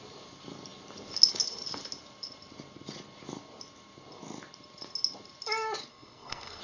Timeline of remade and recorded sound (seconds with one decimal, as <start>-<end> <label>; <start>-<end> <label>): 0.0-5.9 recorded; 5.9-6.6 remade